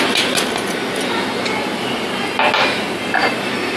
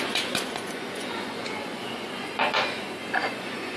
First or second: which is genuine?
first